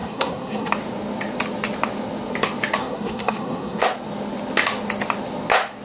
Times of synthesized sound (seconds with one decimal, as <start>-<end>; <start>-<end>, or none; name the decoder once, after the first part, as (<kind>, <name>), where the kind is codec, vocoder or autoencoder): 0.0-0.7 (codec, SNAC); 2.8-3.8